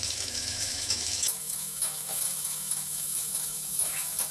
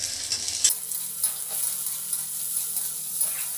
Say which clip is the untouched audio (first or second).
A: second